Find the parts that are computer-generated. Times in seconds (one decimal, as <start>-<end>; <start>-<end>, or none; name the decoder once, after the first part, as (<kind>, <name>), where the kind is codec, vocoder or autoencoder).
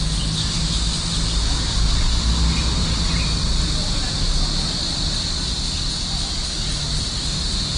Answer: 7.2-7.8 (autoencoder, DAC-VAE)